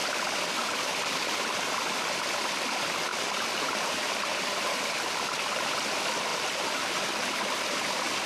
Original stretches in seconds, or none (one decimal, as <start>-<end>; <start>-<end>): 1.9-6.3; 7.5-8.3